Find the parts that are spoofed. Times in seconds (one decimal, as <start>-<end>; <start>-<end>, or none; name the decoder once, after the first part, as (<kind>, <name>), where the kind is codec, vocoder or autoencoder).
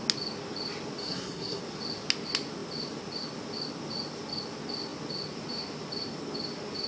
1.0-1.6 (codec, SNAC)